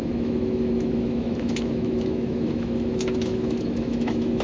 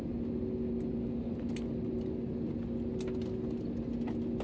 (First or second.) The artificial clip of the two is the first